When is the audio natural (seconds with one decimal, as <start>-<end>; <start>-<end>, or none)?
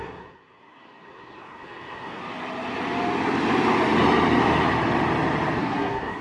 2.2-5.6